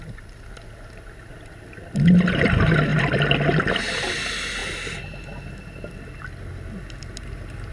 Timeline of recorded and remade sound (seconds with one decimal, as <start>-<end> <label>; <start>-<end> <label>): 0.0-7.7 recorded